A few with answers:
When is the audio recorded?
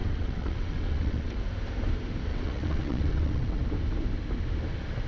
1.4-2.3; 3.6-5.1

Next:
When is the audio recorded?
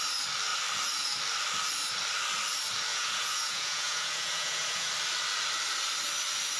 0.0-2.9; 4.9-6.6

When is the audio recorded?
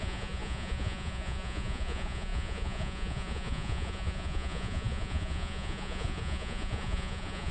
none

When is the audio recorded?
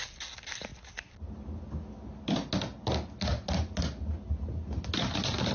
0.0-5.5